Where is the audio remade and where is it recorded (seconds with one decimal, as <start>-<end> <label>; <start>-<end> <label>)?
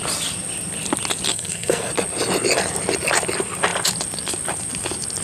0.0-1.3 recorded; 1.3-1.9 remade; 1.9-5.2 recorded